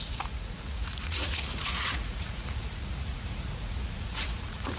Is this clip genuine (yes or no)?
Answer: no